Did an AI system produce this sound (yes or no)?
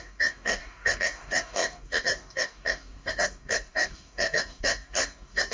yes